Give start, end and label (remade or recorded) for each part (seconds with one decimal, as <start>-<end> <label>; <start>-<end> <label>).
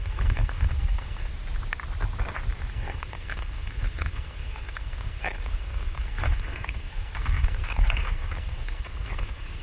0.0-1.3 remade; 1.3-2.7 recorded; 2.7-9.6 remade